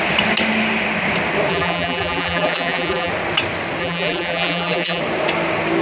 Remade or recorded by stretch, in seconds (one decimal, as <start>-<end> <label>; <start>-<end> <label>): 0.0-1.5 recorded; 1.5-3.1 remade; 3.1-3.8 recorded; 3.8-5.0 remade; 5.0-5.8 recorded